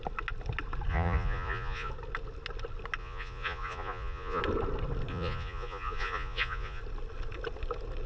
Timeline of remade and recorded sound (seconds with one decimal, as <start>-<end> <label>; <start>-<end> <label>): 0.0-0.9 recorded; 0.9-1.9 remade; 1.9-3.0 recorded; 3.0-4.4 remade; 4.4-5.1 recorded; 5.1-6.8 remade; 6.8-8.1 recorded

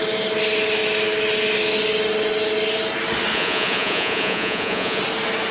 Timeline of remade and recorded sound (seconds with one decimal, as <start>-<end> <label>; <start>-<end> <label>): 0.0-3.3 recorded; 3.3-5.0 remade; 5.0-5.5 recorded

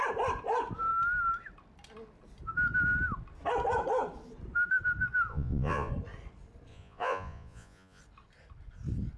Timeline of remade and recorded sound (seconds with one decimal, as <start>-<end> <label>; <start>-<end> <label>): 0.0-5.3 recorded; 5.3-5.9 remade; 5.9-6.7 recorded; 6.7-8.0 remade; 8.0-9.2 recorded

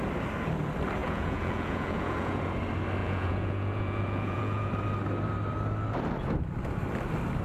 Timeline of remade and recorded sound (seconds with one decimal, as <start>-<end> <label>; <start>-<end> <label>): 0.0-1.0 recorded; 1.0-2.4 remade; 2.4-3.0 recorded; 3.0-4.7 remade; 4.7-7.4 recorded

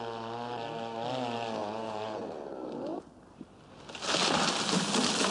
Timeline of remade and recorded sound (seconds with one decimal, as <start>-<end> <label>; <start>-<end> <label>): 0.0-1.6 recorded; 1.6-2.2 remade; 2.2-5.3 recorded